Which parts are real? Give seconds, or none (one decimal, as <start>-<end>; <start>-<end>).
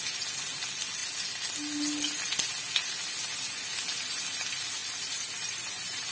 0.0-4.8